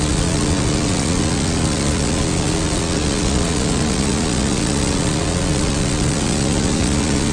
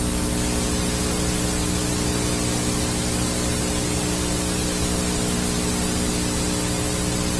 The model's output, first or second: first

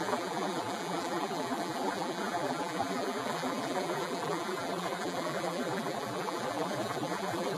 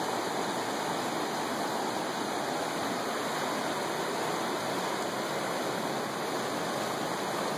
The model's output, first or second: first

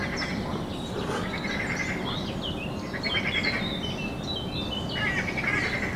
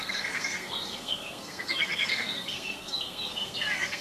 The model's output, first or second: second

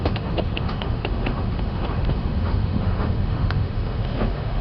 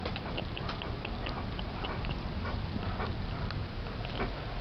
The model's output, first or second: first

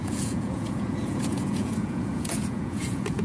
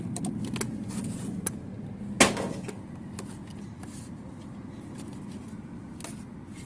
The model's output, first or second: first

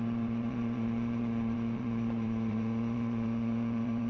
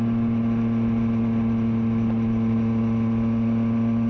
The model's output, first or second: first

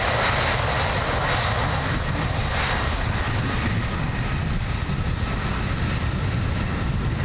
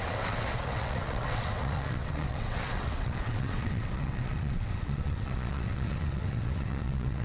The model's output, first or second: second